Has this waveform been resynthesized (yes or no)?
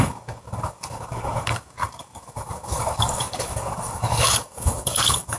yes